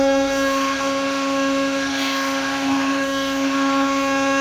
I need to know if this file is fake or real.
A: fake